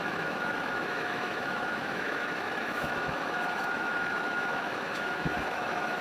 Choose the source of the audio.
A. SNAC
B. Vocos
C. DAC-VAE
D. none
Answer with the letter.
C